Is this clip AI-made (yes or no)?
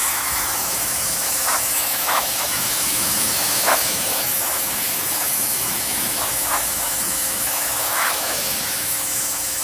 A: yes